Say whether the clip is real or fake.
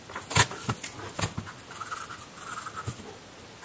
real